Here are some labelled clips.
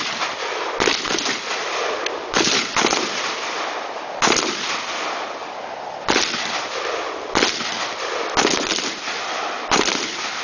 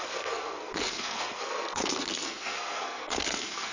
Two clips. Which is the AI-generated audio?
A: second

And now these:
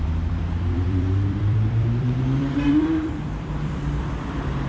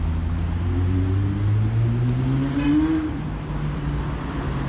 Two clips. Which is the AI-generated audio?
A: first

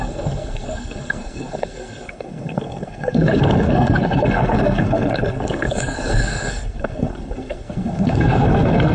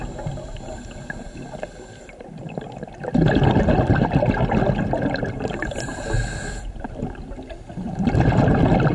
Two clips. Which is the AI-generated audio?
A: first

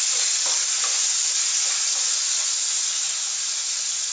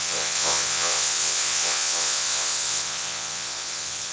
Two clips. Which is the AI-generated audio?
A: second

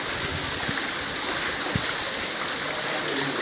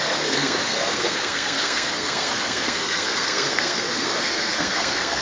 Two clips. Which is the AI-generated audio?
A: second